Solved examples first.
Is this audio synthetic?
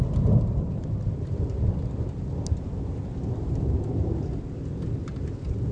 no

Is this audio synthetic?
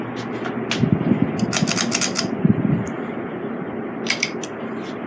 no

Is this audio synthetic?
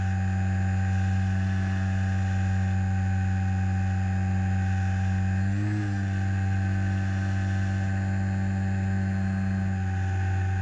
no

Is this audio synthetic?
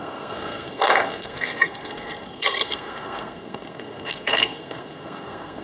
yes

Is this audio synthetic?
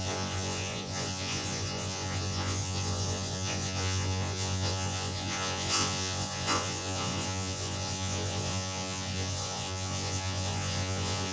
yes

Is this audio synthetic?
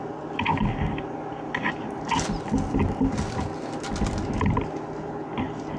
no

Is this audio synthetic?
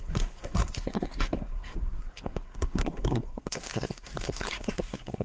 yes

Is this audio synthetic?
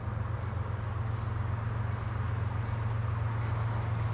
no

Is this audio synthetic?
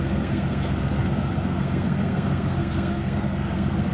yes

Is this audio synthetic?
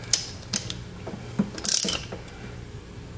no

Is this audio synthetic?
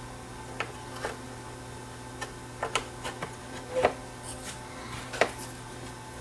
no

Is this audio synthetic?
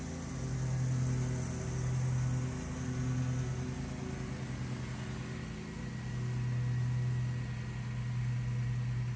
no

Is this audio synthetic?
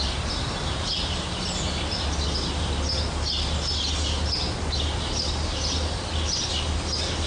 no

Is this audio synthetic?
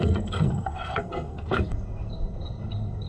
yes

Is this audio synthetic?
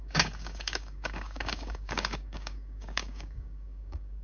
yes